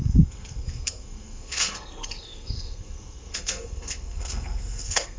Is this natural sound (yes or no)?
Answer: no